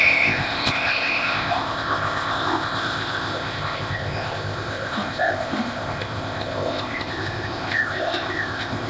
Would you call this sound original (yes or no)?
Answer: no